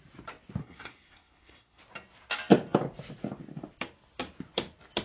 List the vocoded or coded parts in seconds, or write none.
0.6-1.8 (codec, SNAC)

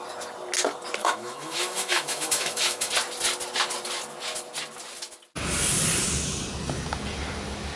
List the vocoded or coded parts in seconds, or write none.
1.0-2.9 (autoencoder, DAC-VAE)

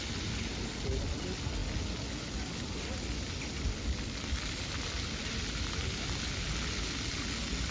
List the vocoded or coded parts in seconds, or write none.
none

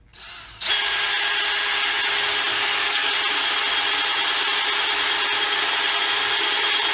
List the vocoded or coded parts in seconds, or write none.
2.5-3.1 (codec, DAC)

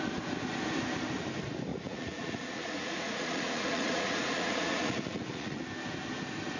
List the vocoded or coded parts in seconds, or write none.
1.7-5.6 (vocoder, Vocos)

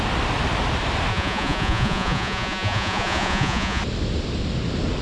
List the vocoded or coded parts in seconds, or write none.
1.1-3.8 (vocoder, Vocos)

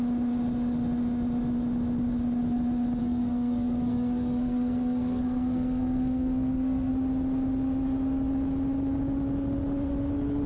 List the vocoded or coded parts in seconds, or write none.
3.0-6.9 (codec, SNAC)

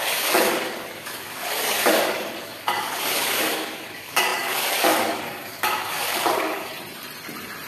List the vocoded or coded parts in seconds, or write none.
0.0-6.7 (codec, DAC)